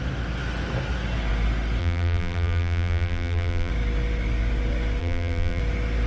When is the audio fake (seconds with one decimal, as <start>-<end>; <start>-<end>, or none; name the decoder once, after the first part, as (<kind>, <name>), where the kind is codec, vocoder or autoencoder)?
1.8-3.7 (vocoder, BigVGAN v2); 5.0-5.6